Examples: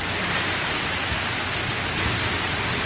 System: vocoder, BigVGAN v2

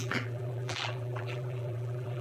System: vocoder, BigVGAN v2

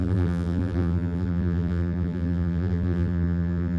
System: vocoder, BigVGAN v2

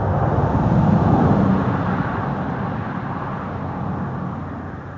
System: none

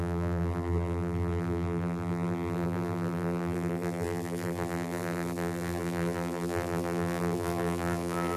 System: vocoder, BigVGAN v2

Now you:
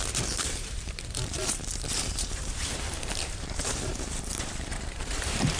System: vocoder, BigVGAN v2